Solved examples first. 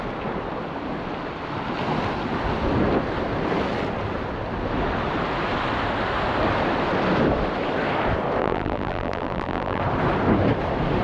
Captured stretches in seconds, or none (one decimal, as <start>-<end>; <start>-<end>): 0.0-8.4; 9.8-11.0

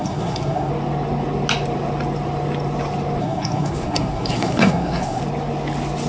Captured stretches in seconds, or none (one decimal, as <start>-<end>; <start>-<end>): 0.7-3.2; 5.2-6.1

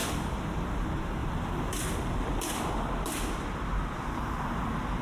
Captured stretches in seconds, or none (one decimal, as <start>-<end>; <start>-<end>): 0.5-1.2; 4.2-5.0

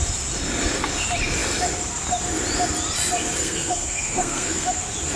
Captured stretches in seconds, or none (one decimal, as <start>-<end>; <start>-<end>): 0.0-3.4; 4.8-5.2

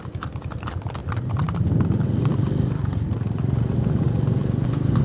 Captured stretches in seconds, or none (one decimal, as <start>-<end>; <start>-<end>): 0.0-5.0